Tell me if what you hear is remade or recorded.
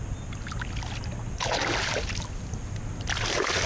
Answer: recorded